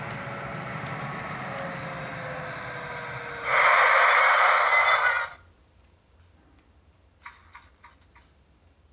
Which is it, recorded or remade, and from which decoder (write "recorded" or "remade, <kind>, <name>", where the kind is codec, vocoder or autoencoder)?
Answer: recorded